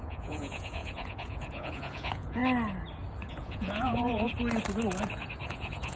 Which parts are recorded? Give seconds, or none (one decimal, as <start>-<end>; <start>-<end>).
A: 2.4-3.3; 4.3-5.5